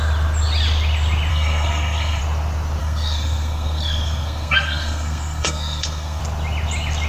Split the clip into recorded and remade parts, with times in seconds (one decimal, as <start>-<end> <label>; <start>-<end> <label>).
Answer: 0.0-1.3 recorded; 1.3-2.2 remade; 2.2-2.8 recorded; 2.8-6.2 remade; 6.2-7.1 recorded